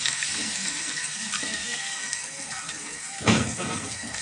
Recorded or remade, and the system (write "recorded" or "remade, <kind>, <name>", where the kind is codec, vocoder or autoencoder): remade, codec, SNAC